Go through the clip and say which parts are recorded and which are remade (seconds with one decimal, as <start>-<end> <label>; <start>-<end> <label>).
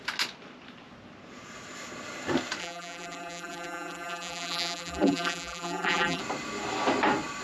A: 0.0-2.6 recorded; 2.6-6.2 remade; 6.2-7.4 recorded